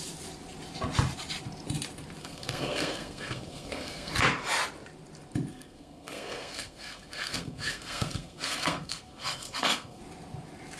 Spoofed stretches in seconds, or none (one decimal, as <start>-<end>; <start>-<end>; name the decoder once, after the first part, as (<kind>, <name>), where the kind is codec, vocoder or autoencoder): 2.2-4.1 (codec, SNAC); 5.5-10.0